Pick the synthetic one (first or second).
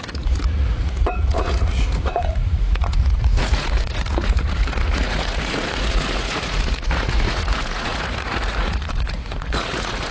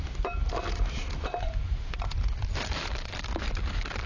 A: first